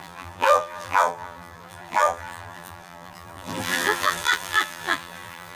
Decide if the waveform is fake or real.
fake